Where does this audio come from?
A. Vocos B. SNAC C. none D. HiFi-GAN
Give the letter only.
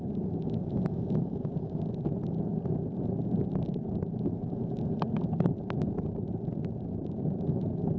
C